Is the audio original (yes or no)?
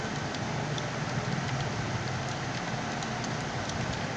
yes